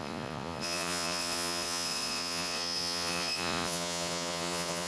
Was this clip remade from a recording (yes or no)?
yes